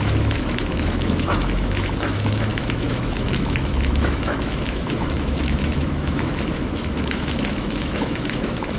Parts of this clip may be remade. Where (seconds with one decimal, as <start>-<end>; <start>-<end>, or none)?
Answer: 0.0-8.8